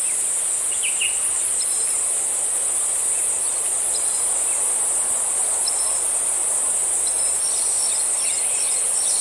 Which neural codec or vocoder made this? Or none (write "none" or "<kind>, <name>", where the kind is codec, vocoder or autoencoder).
none